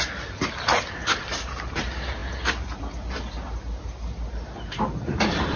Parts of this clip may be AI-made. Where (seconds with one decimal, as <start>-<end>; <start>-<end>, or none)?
none